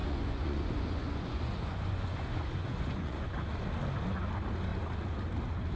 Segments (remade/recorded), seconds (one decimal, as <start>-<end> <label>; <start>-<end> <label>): 0.0-3.5 remade; 3.5-5.8 recorded